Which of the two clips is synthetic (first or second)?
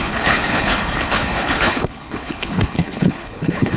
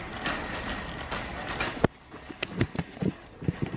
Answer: first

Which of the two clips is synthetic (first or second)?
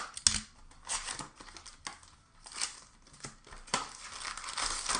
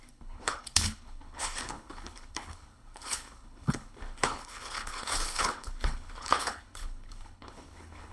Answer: second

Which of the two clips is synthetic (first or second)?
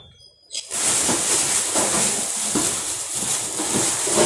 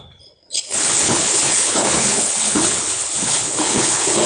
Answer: second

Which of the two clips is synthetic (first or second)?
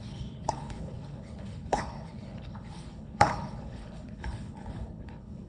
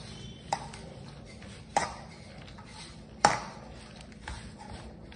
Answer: first